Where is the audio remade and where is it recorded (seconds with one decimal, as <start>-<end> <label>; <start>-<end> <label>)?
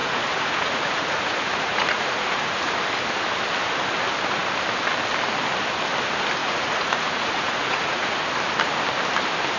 0.0-2.8 remade; 2.8-6.4 recorded; 6.4-8.2 remade; 8.2-9.6 recorded